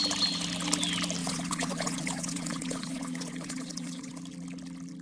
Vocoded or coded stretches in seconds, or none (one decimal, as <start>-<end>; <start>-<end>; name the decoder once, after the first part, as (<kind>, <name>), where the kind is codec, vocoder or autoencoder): 1.2-4.2 (vocoder, Vocos)